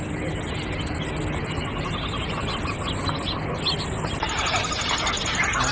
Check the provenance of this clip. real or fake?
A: real